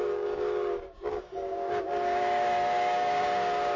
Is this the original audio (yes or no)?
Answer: no